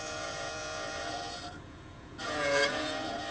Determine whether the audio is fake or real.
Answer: fake